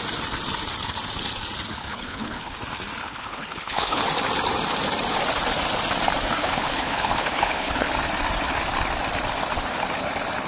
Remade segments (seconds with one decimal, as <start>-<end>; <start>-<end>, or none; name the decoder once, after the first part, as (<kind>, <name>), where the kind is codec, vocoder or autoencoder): 1.8-2.6 (codec, HILCodec); 3.0-4.0; 6.4-7.9